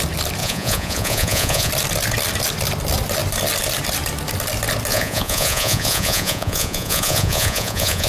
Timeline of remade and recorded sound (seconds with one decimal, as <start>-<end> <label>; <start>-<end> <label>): 0.0-0.4 recorded; 0.4-1.7 remade; 1.7-4.9 recorded; 4.9-8.1 remade